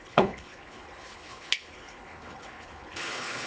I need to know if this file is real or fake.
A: fake